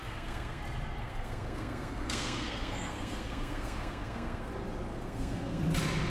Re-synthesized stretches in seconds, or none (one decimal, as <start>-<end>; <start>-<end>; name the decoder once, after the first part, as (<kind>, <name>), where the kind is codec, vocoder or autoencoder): 0.0-0.6 (codec, SNAC); 1.0-4.5; 4.9-5.6